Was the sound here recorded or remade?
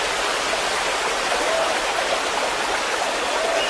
recorded